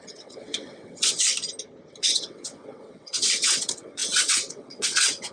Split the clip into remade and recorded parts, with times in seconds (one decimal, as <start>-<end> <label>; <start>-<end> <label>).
0.0-1.3 remade; 1.3-2.0 recorded; 2.0-5.3 remade